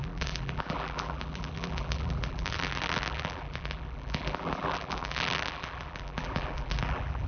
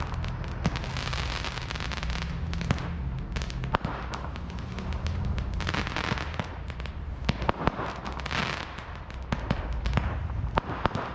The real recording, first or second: second